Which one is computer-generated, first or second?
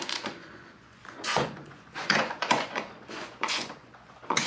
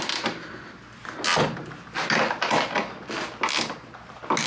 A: first